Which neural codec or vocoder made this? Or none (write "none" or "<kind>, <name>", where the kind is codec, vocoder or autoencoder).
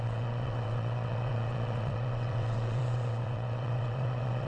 vocoder, WaveNeXt